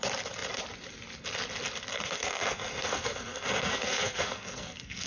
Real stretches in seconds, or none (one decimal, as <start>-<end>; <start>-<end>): 0.0-1.9